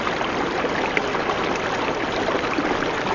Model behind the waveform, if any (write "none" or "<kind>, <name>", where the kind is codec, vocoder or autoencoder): none